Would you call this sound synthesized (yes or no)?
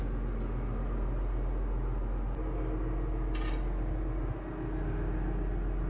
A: no